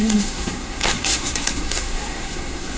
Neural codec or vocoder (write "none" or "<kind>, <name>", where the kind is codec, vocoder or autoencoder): codec, SNAC